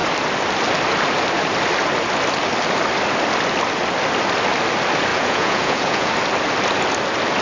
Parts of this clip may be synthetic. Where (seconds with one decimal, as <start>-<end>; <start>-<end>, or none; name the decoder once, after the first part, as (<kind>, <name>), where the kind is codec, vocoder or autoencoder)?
5.1-6.1 (vocoder, Vocos)